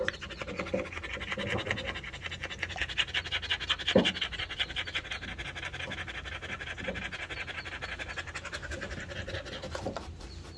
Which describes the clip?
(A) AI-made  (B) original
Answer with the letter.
B